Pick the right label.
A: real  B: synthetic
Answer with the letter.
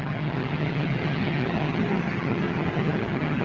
B